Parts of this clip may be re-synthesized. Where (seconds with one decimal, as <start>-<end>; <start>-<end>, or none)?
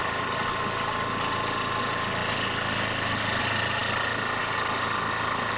0.0-0.6